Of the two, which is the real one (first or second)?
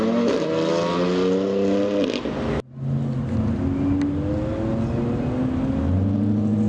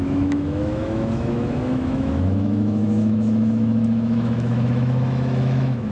first